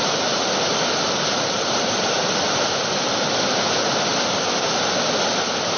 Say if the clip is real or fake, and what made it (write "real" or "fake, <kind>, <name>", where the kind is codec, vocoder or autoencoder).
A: real